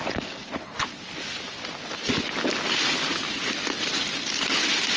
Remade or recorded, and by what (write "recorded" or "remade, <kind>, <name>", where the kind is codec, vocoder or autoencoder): recorded